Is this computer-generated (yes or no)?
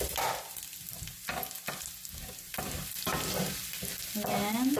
no